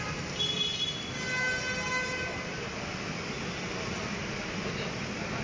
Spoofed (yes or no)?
no